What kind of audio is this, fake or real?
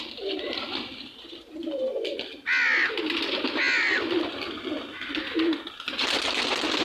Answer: real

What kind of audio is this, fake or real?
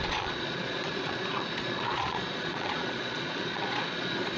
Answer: fake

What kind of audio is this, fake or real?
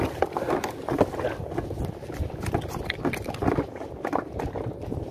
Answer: real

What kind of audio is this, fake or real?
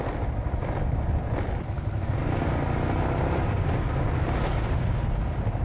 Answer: real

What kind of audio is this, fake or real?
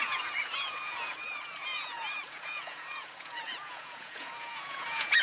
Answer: fake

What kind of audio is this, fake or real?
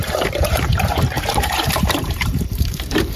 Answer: fake